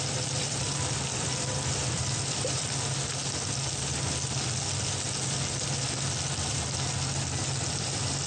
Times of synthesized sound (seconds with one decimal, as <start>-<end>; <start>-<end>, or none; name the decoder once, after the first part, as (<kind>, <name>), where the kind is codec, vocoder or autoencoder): 0.0-3.2 (vocoder, BigVGAN v2); 7.7-8.3